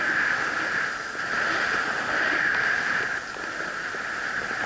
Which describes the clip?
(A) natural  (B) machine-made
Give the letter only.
A